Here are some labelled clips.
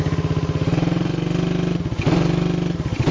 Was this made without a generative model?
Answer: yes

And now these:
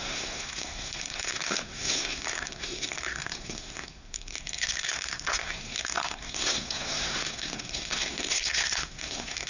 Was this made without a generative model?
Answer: no